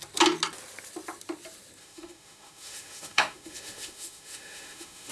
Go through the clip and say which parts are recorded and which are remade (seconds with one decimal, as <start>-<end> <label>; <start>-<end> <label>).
0.0-1.8 recorded; 1.8-5.1 remade